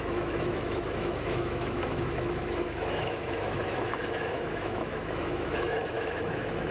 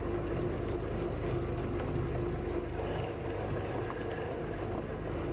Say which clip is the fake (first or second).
first